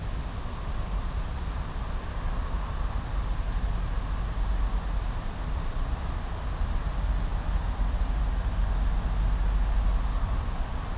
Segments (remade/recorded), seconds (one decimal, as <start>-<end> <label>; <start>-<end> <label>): 0.0-11.0 recorded